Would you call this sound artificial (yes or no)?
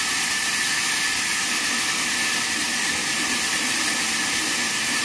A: no